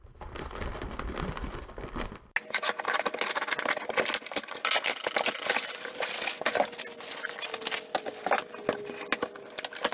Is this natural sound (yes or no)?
yes